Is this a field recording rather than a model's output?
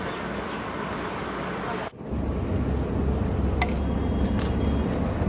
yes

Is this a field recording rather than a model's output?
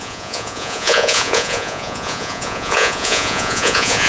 no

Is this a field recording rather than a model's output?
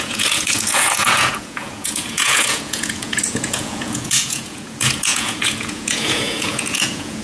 no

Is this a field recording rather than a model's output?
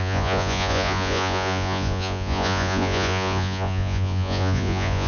no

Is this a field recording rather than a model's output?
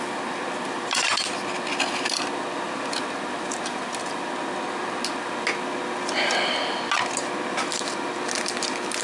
yes